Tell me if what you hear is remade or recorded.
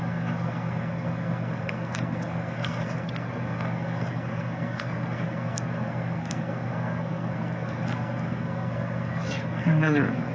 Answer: remade